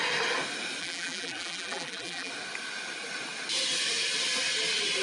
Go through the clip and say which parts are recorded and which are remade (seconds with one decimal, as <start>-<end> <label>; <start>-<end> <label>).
0.0-0.8 recorded; 0.8-2.3 remade; 2.3-5.0 recorded